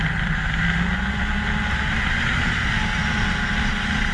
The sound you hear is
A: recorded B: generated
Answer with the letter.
A